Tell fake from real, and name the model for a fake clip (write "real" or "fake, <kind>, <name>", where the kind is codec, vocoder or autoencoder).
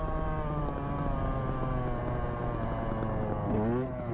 real